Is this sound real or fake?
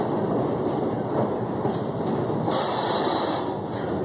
real